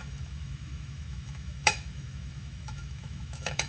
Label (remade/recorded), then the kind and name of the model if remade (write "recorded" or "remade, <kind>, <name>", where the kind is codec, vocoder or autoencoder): remade, autoencoder, DAC-VAE